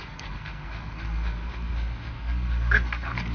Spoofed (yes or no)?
yes